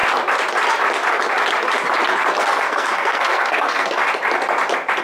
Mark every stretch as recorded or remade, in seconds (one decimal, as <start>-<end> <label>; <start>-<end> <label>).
0.0-2.4 recorded; 2.4-4.0 remade; 4.0-5.0 recorded

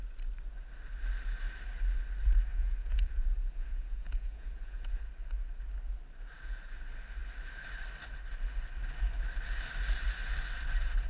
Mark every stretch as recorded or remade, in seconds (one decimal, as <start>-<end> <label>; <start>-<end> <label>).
0.0-2.5 recorded; 2.5-5.0 remade; 5.0-11.1 recorded